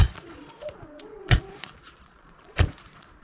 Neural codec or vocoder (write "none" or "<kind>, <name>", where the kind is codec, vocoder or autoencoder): vocoder, Vocos